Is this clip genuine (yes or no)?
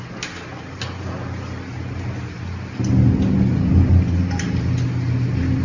yes